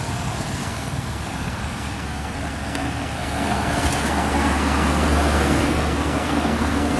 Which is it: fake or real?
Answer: fake